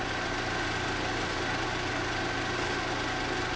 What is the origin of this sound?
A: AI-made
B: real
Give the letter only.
B